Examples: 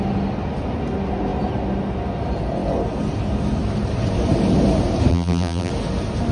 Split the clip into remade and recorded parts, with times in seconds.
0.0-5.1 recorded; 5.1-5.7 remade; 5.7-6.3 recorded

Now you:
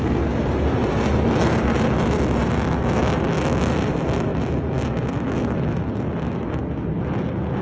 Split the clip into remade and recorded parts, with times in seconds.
0.0-7.6 recorded

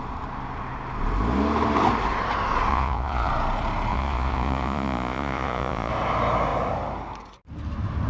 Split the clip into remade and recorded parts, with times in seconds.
0.0-2.7 recorded; 2.7-3.3 remade; 3.3-3.9 recorded; 3.9-5.9 remade; 5.9-8.1 recorded

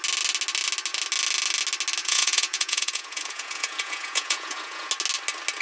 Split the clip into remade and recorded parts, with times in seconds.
0.0-2.0 recorded; 2.0-4.9 remade; 4.9-5.6 recorded

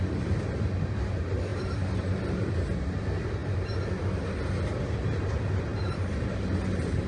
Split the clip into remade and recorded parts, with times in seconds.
0.0-1.5 recorded; 1.5-2.8 remade; 2.8-5.7 recorded; 5.7-7.1 remade